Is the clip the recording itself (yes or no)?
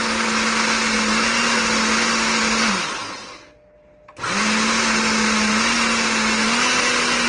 yes